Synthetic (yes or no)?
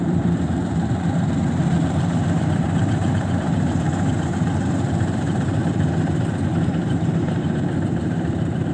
yes